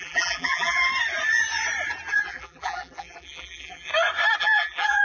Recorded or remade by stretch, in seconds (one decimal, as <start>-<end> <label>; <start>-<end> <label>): 0.0-0.9 remade; 0.9-2.1 recorded; 2.1-3.9 remade; 3.9-4.4 recorded; 4.4-5.0 remade